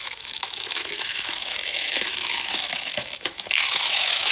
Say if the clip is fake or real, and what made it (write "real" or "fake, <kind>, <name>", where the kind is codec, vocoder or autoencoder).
fake, autoencoder, DAC-VAE